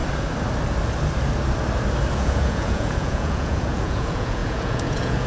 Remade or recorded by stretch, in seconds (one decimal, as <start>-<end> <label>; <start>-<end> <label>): 0.0-2.1 recorded; 2.1-5.3 remade